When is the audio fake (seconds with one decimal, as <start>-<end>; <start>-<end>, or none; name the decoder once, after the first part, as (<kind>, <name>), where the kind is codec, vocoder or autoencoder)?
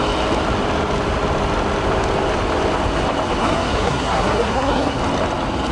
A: 3.4-5.0 (codec, SNAC)